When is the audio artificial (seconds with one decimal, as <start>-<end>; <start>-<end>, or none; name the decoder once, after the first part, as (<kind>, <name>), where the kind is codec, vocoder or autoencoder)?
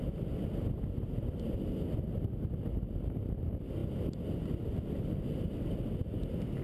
none